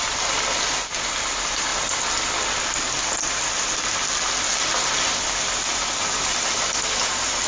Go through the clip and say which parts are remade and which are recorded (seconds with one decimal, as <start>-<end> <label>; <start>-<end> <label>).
0.0-7.5 recorded